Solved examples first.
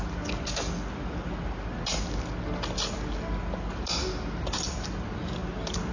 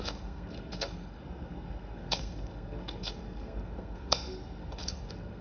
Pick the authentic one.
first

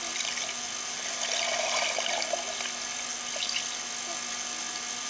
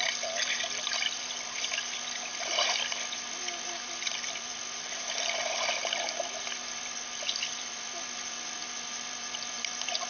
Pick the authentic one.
first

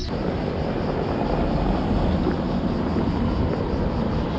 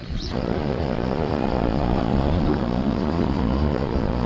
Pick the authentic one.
first